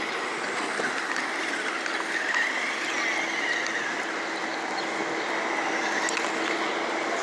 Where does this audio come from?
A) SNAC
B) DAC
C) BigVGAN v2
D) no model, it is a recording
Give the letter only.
D